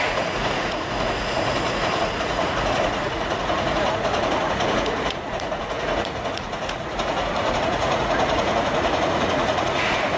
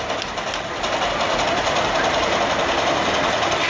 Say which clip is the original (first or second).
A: second